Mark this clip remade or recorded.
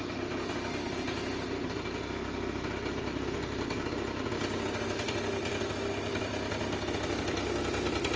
recorded